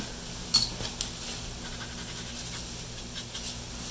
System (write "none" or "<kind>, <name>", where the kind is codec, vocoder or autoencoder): none